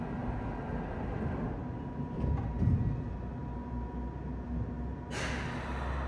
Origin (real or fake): real